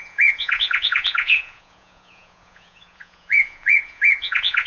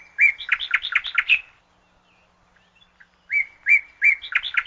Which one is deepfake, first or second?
first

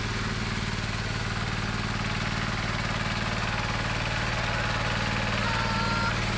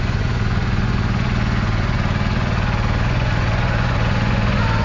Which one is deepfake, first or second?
second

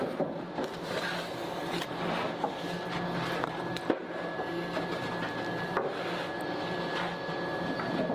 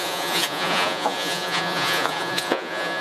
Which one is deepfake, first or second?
second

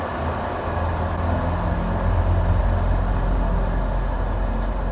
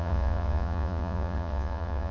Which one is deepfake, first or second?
second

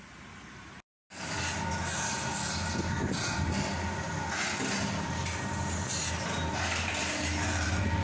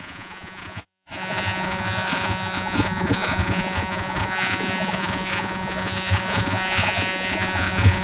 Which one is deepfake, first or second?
second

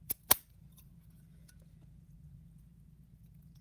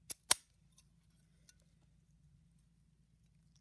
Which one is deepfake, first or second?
first